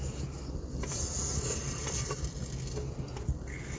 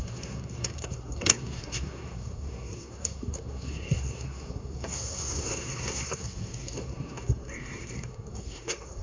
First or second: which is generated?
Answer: second